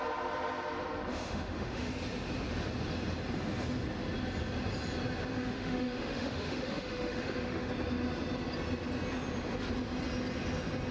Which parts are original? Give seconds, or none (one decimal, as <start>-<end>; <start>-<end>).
0.0-1.1; 1.9-5.3; 7.7-10.9